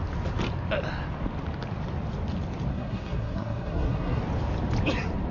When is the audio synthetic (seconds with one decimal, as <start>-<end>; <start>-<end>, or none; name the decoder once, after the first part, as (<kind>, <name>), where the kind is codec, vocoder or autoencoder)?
2.7-4.2 (codec, SNAC)